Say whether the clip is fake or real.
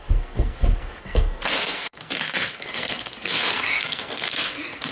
fake